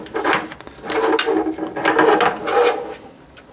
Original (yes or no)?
yes